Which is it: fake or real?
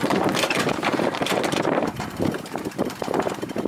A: fake